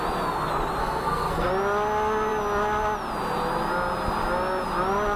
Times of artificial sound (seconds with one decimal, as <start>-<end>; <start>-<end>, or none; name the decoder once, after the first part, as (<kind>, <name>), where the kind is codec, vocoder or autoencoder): 0.8-1.5 (codec, SNAC)

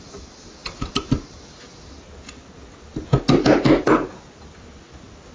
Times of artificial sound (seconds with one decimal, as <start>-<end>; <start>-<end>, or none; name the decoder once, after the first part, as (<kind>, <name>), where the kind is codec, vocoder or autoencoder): none